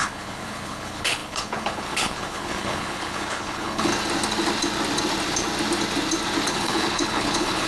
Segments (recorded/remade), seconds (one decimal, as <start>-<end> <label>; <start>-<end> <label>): 0.0-3.9 remade; 3.9-6.5 recorded; 6.5-7.7 remade